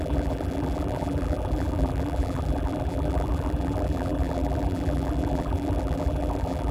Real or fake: fake